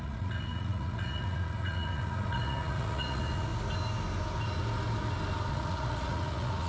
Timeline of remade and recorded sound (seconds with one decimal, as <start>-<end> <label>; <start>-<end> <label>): 0.0-3.5 remade; 3.5-5.5 recorded; 5.5-6.7 remade